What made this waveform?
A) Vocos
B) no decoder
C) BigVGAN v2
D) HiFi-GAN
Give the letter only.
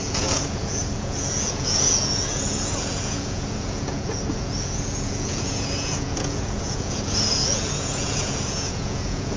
A